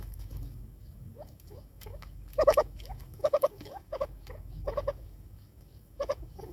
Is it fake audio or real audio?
fake